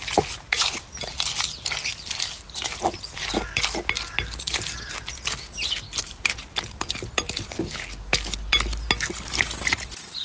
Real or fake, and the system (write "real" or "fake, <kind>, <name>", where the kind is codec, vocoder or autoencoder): real